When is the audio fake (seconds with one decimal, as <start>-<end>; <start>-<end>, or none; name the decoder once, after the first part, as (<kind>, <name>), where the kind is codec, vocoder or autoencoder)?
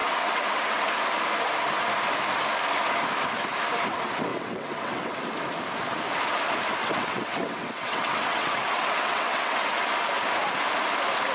0.0-0.9 (vocoder, WaveNeXt); 4.3-5.2; 6.8-9.6